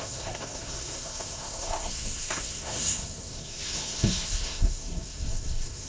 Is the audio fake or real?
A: fake